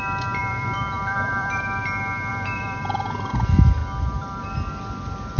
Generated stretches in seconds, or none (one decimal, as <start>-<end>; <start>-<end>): 0.4-1.6; 2.3-3.3; 3.8-4.4